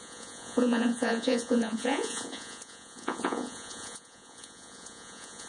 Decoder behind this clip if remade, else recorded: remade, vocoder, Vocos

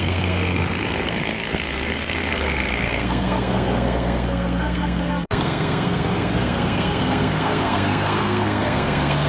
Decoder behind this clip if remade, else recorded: remade, codec, SNAC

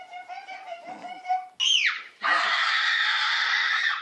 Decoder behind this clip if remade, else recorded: recorded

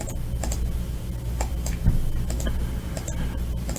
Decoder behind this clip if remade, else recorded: recorded